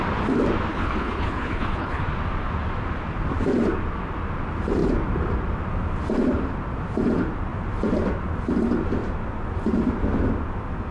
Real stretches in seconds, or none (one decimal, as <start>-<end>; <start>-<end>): 0.0-0.7; 2.0-10.9